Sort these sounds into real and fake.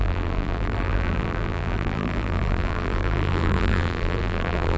fake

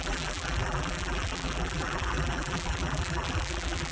fake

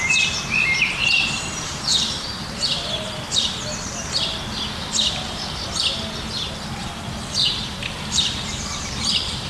fake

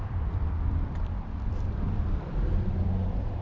fake